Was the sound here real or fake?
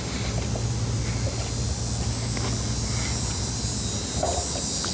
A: real